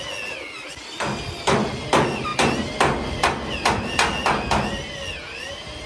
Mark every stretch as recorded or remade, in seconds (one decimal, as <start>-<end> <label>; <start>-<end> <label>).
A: 0.0-5.9 recorded